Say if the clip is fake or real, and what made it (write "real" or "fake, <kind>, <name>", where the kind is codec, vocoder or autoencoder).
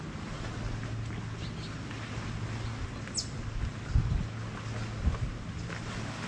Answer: real